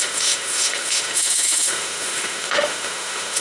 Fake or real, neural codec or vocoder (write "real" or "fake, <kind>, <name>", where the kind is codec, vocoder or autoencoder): fake, autoencoder, DAC-VAE